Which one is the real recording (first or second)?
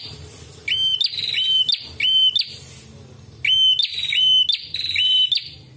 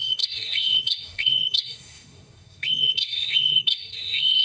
first